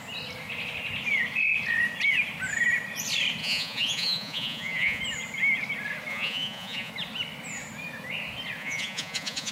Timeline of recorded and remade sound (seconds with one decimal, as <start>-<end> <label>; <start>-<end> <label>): 0.0-3.4 recorded; 3.4-5.0 remade; 5.0-6.1 recorded; 6.1-6.9 remade; 6.9-8.6 recorded; 8.6-9.5 remade